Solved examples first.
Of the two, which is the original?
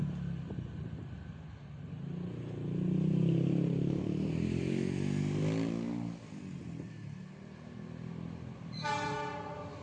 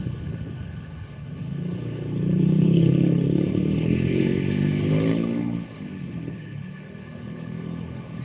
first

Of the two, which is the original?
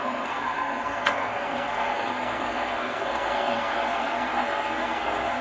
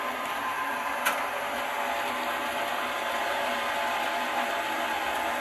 second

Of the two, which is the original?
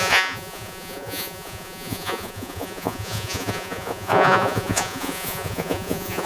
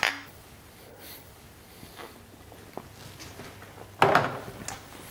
second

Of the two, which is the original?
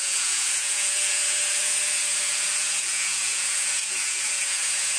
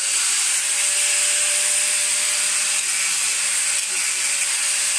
second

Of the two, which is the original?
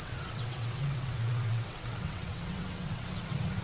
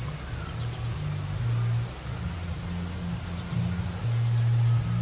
second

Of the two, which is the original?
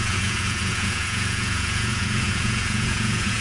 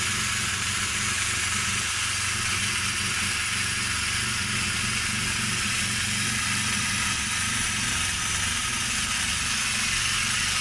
second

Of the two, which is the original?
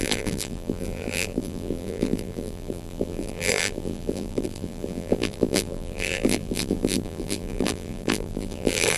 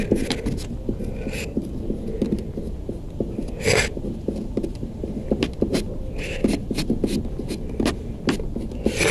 second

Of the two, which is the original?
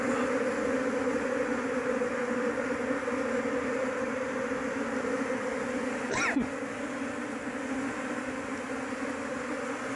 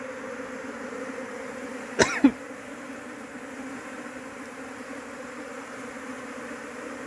first